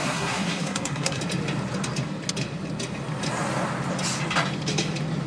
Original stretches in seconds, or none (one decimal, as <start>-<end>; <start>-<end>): 1.2-5.3